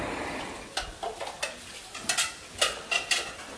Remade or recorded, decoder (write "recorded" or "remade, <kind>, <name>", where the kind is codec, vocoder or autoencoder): recorded